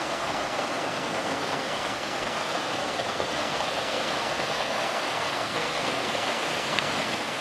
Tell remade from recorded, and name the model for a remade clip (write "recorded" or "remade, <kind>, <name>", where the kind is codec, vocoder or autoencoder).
remade, codec, SNAC